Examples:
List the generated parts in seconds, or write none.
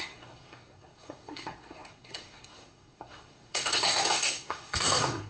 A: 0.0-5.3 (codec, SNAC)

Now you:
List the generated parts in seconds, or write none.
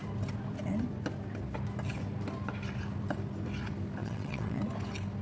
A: 4.0-4.6 (vocoder, WaveNeXt)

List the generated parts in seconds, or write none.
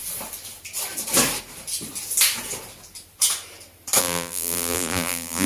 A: 4.0-5.5 (vocoder, BigVGAN v2)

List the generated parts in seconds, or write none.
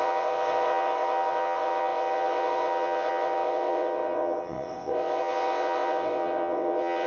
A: 0.0-7.1 (vocoder, WaveNeXt)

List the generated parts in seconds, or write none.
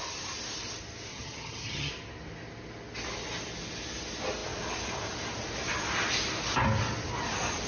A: 1.1-1.9 (vocoder, HiFi-GAN)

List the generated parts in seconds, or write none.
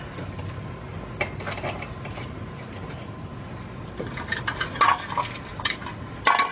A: none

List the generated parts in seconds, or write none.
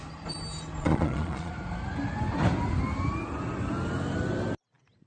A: 0.8-1.5 (vocoder, Vocos)